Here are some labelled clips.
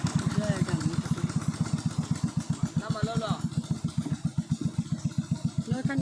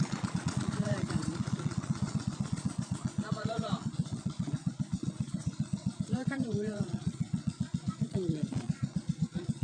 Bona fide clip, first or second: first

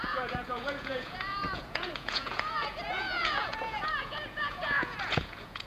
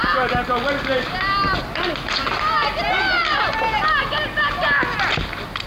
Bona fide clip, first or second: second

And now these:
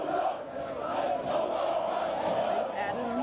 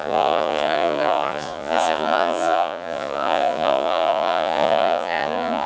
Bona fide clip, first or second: first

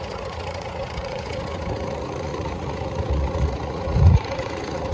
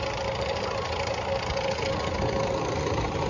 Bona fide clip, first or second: second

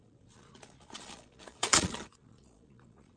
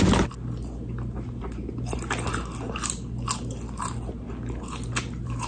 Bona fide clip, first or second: second